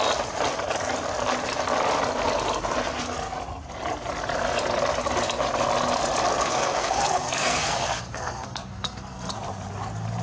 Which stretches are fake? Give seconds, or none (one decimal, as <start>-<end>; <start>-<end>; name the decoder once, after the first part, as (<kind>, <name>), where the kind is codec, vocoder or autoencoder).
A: 6.3-9.3 (codec, SNAC)